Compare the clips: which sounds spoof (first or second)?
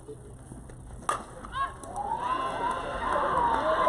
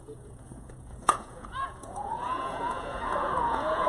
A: second